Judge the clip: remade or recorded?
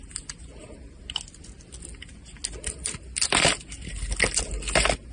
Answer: recorded